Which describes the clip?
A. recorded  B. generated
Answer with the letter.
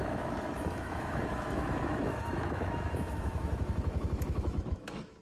B